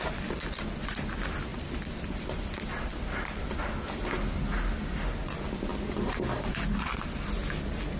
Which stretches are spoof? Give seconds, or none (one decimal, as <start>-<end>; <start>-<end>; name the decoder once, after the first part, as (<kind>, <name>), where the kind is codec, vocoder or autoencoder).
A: 1.5-2.6 (vocoder, BigVGAN v2); 5.7-7.1